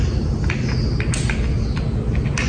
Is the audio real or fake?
real